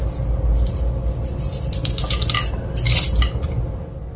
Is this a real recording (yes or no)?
yes